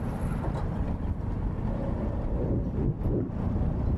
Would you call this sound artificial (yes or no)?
no